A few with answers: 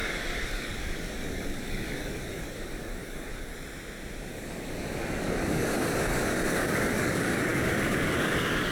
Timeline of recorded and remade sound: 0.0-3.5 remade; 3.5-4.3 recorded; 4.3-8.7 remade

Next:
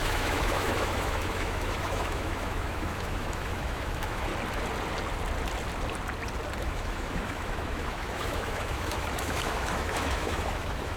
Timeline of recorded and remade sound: 0.0-4.3 remade; 4.3-6.6 recorded; 6.6-11.0 remade

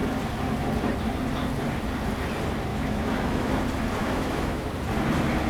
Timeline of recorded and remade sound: 0.0-2.7 recorded; 2.7-3.6 remade; 3.6-4.0 recorded; 4.0-4.7 remade; 4.7-5.5 recorded

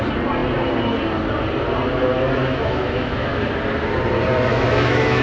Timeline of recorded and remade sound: 0.0-2.4 recorded; 2.4-3.4 remade; 3.4-4.5 recorded; 4.5-5.2 remade

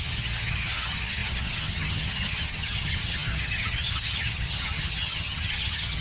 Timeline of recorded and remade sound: 0.0-6.0 remade

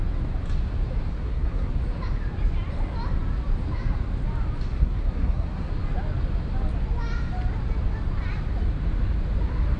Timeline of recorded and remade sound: 0.0-1.1 recorded; 1.1-1.7 remade; 1.7-4.8 recorded; 4.8-5.7 remade; 5.7-9.8 recorded

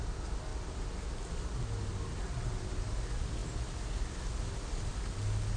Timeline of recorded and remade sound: 0.0-5.6 recorded

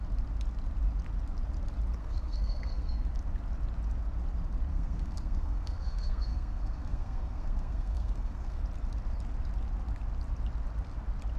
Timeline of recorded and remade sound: 0.0-2.0 recorded; 2.0-3.0 remade; 3.0-4.7 recorded; 4.7-8.6 remade; 8.6-11.4 recorded